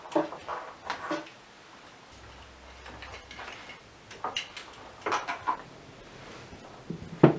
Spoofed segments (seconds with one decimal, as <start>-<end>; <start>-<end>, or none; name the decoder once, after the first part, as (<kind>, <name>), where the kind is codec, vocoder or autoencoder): none